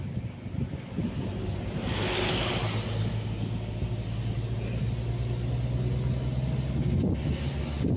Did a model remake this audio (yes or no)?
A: no